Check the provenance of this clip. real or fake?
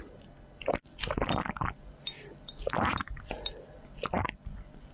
real